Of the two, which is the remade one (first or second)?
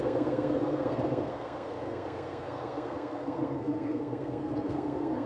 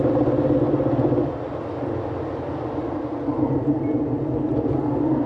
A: first